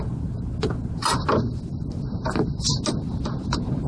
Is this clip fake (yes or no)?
no